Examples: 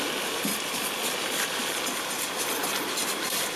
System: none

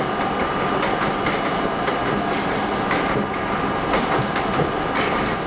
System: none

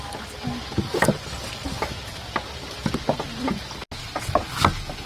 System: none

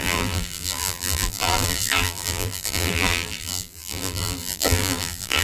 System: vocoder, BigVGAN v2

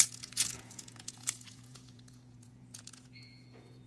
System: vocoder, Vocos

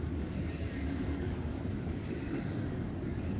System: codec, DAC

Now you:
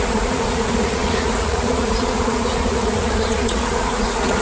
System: vocoder, Vocos